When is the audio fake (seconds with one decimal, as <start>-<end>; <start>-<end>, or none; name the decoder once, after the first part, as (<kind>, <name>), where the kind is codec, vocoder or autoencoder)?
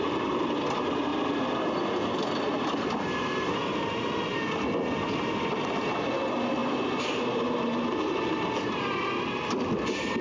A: none